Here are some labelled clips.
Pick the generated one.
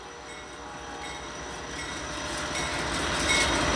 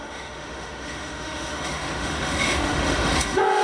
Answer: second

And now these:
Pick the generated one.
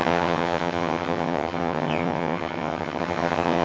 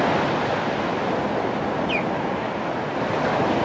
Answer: first